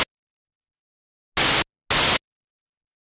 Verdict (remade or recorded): recorded